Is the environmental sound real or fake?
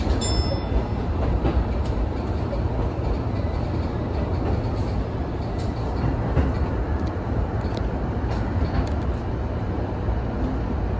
real